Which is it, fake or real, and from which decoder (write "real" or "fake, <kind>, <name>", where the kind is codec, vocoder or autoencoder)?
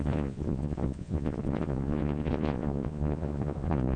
fake, vocoder, Vocos